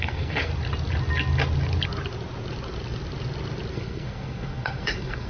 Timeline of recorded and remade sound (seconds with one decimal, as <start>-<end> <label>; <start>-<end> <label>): 0.0-0.5 remade; 0.5-3.7 recorded; 3.7-5.3 remade